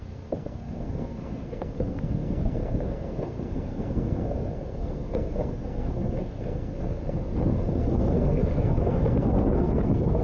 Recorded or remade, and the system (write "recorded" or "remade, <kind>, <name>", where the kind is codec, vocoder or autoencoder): remade, codec, SNAC